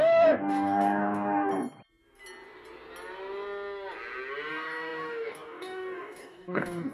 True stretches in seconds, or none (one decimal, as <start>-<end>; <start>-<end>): 1.5-4.5